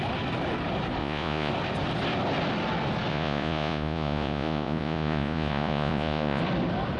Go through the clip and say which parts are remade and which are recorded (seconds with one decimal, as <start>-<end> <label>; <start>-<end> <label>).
0.0-1.0 recorded; 1.0-1.5 remade; 1.5-3.1 recorded; 3.1-6.4 remade; 6.4-7.0 recorded